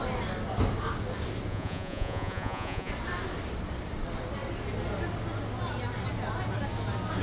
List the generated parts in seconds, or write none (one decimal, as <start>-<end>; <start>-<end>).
1.5-2.9